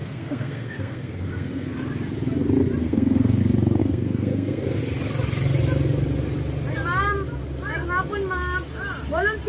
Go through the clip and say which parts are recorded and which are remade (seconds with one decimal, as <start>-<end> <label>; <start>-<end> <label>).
0.0-1.7 remade; 1.7-2.8 recorded; 2.8-3.4 remade; 3.4-3.8 recorded; 3.8-4.8 remade; 4.8-9.5 recorded